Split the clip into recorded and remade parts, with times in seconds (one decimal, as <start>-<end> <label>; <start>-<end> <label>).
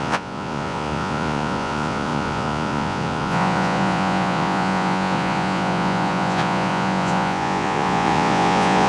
0.0-8.9 remade